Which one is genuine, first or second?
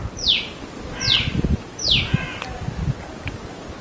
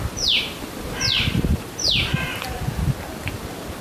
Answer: first